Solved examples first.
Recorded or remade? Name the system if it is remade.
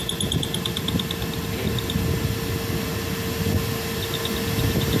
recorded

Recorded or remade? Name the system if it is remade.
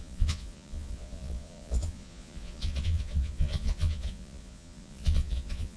remade, vocoder, Vocos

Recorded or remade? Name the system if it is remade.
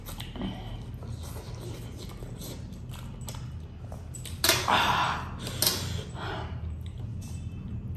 recorded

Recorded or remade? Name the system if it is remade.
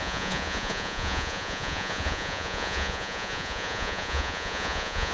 remade, vocoder, Vocos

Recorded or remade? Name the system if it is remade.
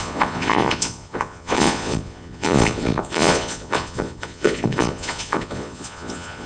remade, vocoder, Vocos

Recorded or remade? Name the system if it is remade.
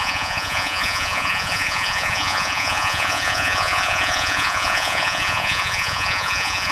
remade, vocoder, Vocos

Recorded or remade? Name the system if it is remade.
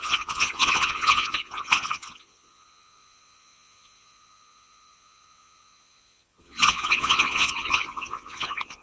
remade, vocoder, Vocos